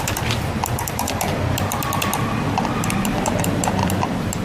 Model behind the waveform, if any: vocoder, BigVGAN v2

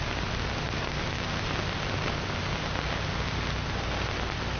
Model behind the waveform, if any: none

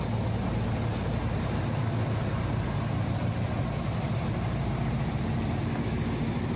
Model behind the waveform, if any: none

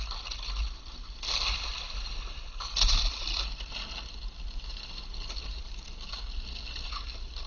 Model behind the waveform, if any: none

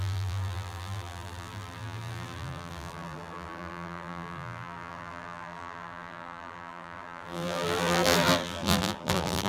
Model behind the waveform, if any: vocoder, BigVGAN v2